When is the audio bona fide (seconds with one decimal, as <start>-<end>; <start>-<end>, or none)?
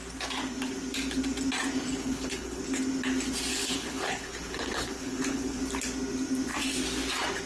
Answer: 0.0-1.9; 2.6-3.5; 5.6-7.5